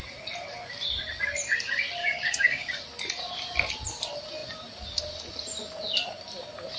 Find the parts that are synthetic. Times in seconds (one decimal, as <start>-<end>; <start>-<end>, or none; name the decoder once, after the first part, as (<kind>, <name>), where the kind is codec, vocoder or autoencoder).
2.0-2.7 (codec, DAC)

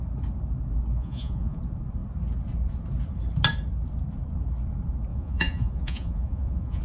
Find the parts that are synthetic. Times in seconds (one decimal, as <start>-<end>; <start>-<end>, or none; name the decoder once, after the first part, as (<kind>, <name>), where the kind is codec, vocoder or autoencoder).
0.9-1.6 (vocoder, Vocos); 5.1-6.8

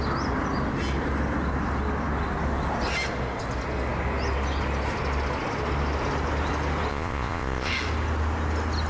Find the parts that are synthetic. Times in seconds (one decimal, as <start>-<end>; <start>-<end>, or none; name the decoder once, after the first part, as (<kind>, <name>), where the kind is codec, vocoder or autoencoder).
6.9-7.7 (vocoder, Vocos)

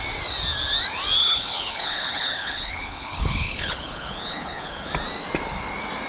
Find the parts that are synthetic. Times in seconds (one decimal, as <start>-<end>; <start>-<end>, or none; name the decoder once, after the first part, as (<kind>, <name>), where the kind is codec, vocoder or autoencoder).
1.2-4.9 (codec, HILCodec)